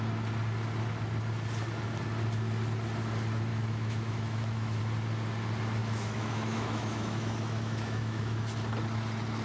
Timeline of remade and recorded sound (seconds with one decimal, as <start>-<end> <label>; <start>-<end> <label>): 0.0-3.5 recorded; 3.5-4.8 remade; 4.8-5.8 recorded; 5.8-8.4 remade; 8.4-9.4 recorded